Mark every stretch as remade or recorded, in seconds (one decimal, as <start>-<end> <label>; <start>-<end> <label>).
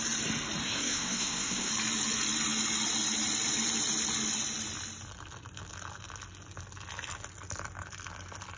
0.0-0.6 recorded; 0.6-1.7 remade; 1.7-8.6 recorded